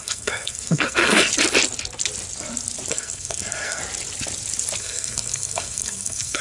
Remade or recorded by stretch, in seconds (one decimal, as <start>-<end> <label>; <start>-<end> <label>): 0.0-1.3 remade; 1.3-2.9 recorded; 2.9-3.8 remade; 3.8-4.8 recorded; 4.8-6.4 remade